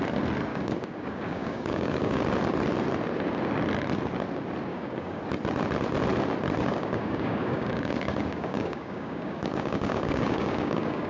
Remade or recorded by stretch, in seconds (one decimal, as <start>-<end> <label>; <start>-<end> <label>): 0.0-0.5 recorded; 0.5-2.2 remade; 2.2-4.7 recorded; 4.7-5.2 remade; 5.2-6.7 recorded; 6.7-11.1 remade